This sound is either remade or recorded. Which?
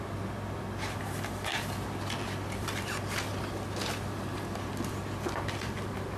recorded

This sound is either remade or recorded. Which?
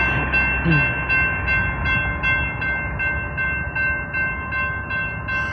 recorded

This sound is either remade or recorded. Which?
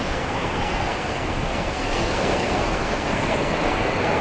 remade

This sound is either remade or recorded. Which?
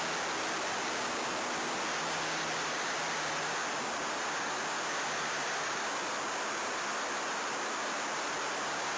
recorded